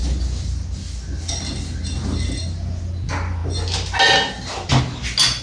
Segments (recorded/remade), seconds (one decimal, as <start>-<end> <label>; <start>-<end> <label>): 0.0-5.4 recorded